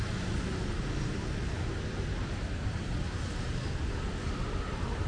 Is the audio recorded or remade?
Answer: recorded